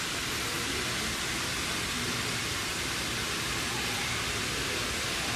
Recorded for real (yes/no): no